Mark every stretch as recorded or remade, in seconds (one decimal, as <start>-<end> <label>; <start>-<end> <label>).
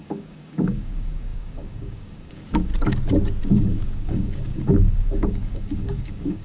0.0-2.7 remade; 2.7-3.4 recorded; 3.4-6.4 remade